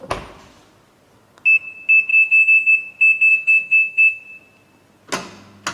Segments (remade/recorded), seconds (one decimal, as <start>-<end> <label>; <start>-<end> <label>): 0.0-2.1 recorded; 2.1-2.7 remade; 2.7-3.3 recorded; 3.3-4.2 remade; 4.2-5.7 recorded